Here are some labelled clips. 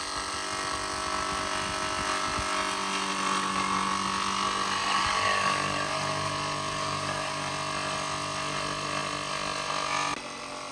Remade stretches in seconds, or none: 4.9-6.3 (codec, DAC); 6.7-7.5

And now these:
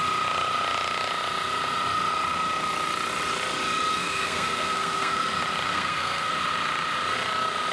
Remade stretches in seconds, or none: 3.9-5.2 (codec, SNAC); 5.7-6.3

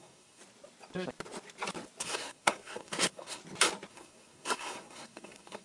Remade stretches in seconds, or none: 0.0-0.4 (codec, SNAC); 2.0-3.4; 3.9-5.6